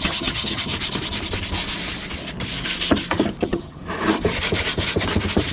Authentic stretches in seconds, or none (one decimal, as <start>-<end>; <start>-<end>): 0.7-3.4; 3.8-5.5